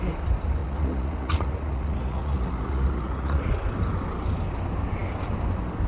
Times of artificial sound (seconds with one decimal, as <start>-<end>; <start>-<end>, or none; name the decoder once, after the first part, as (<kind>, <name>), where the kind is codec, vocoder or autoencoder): 0.6-3.5 (vocoder, Vocos)